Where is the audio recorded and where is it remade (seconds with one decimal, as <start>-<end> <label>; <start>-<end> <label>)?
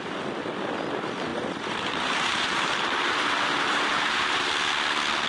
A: 0.0-1.3 recorded; 1.3-4.5 remade; 4.5-5.3 recorded